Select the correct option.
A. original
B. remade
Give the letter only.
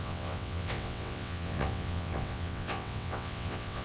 B